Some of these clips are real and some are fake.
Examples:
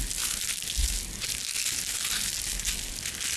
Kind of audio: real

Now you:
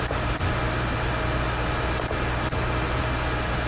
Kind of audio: fake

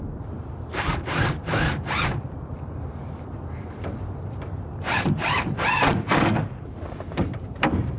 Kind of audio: fake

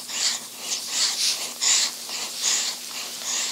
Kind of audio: fake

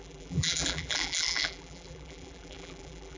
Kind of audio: fake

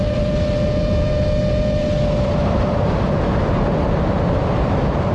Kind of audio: real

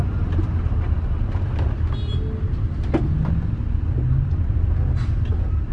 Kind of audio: real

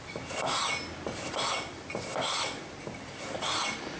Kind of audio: real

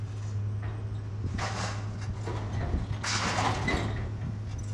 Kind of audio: real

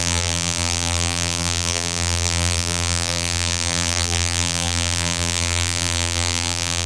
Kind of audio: fake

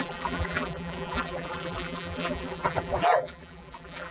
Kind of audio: fake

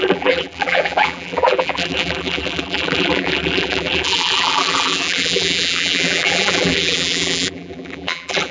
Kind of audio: fake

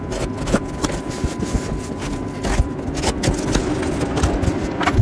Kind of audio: real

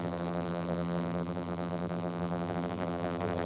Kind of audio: fake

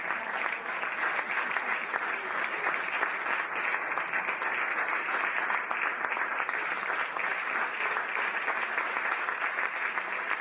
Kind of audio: real